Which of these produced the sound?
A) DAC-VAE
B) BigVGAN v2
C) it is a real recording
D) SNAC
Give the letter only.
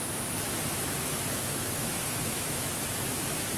A